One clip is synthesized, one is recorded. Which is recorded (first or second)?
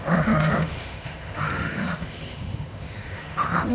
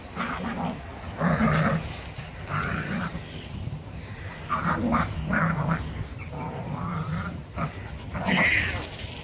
second